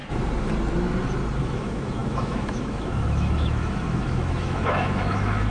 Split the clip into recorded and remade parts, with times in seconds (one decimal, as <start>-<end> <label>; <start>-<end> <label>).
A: 0.0-1.4 recorded; 1.4-5.5 remade